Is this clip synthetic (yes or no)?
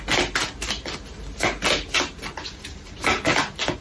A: no